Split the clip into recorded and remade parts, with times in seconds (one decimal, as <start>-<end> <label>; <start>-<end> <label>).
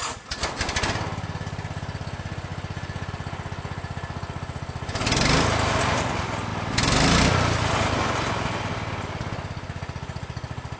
0.0-10.8 recorded